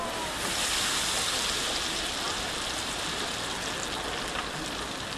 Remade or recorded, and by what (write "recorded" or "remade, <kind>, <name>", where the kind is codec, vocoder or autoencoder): recorded